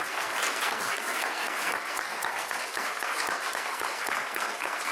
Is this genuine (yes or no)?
no